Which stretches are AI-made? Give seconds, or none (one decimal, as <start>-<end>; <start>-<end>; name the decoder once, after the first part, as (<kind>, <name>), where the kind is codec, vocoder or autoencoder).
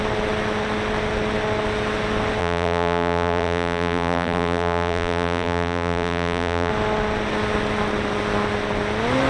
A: 2.4-6.7 (vocoder, BigVGAN v2)